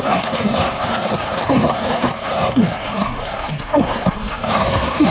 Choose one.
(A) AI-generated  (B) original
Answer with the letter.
A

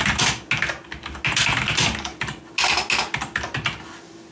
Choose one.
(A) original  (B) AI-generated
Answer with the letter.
A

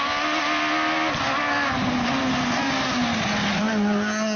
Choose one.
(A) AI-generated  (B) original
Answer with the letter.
B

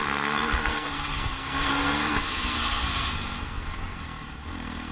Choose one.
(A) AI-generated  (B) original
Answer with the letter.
A